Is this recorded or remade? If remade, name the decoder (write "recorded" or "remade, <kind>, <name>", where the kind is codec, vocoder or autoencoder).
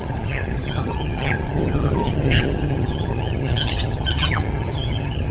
remade, vocoder, HiFi-GAN